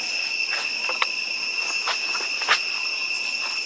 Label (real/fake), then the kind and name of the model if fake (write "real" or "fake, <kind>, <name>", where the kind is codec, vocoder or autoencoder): real